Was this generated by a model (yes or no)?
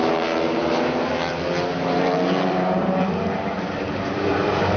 yes